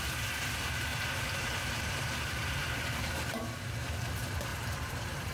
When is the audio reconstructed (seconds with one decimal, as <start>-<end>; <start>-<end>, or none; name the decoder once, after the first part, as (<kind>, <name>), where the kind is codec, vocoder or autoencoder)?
0.9-3.1 (vocoder, BigVGAN v2); 4.5-5.3